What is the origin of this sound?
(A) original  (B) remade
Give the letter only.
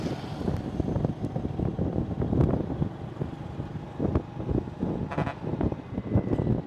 A